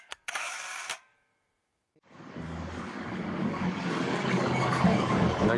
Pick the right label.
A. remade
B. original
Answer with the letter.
A